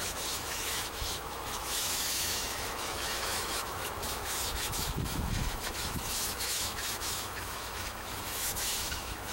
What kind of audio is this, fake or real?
fake